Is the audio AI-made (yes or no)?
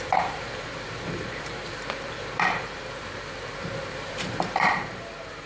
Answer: yes